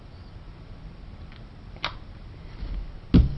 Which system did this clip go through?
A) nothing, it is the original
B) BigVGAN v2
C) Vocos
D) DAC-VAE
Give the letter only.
A